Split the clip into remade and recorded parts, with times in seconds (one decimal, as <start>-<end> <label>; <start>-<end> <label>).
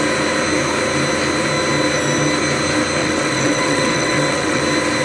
0.0-3.0 recorded; 3.0-4.6 remade; 4.6-5.0 recorded